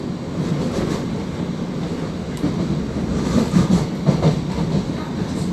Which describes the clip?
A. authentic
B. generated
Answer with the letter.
A